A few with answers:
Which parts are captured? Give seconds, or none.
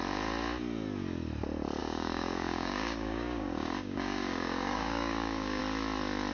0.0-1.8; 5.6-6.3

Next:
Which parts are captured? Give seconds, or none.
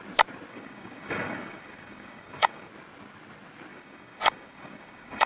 0.0-0.5; 2.7-3.7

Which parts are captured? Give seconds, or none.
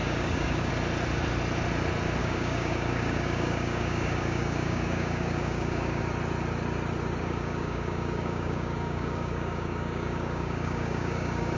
0.7-2.2; 6.0-7.2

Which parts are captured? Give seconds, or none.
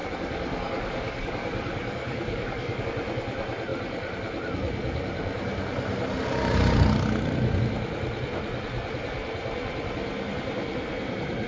2.8-11.5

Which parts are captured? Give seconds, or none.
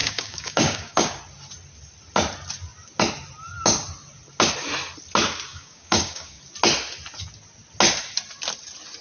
1.2-5.5; 6.4-9.0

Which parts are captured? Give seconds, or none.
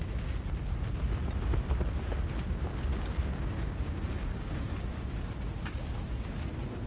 0.0-2.9; 5.2-6.9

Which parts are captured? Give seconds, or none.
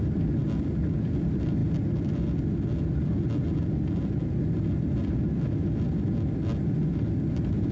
0.0-7.7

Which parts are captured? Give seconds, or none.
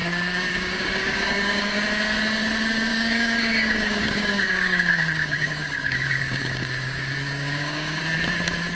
1.8-2.9; 8.0-8.7